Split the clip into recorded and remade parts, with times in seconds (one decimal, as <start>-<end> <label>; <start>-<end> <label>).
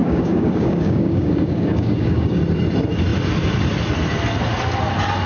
0.0-2.4 remade; 2.4-5.3 recorded